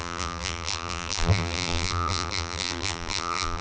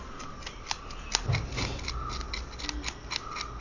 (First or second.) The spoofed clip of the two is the first